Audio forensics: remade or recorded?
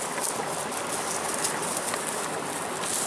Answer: recorded